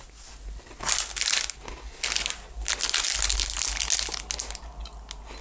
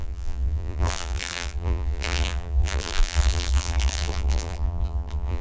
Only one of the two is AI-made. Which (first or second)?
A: second